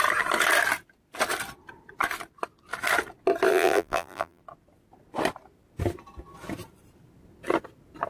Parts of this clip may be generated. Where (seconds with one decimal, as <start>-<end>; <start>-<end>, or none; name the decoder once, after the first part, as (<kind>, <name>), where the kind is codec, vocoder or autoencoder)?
3.5-4.4 (vocoder, BigVGAN v2)